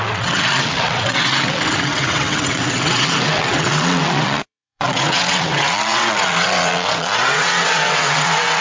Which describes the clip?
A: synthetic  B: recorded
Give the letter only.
A